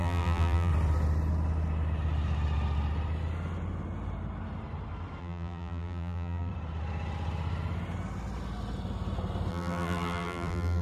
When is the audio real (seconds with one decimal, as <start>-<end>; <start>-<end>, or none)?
0.7-5.2; 6.5-9.5